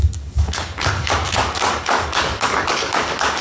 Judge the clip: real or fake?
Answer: fake